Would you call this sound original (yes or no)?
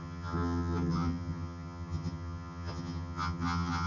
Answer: no